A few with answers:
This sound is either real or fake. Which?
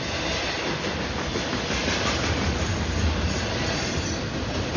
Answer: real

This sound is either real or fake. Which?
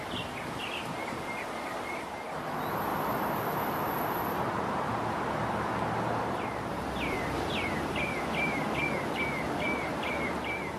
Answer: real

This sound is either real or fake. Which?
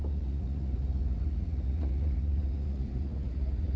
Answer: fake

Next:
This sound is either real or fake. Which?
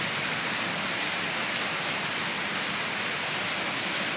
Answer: real